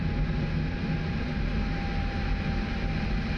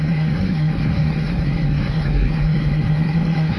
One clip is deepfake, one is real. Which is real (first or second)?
first